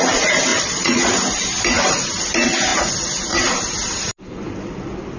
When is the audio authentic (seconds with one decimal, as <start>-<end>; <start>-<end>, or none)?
0.0-0.5; 1.1-5.2